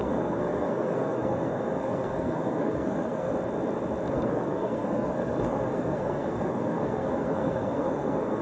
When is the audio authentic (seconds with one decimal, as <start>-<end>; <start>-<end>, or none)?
3.3-4.1